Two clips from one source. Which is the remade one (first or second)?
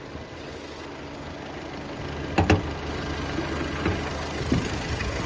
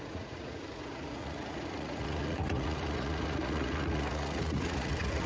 second